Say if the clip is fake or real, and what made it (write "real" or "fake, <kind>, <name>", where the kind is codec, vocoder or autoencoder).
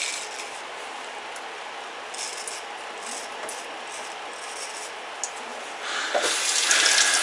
real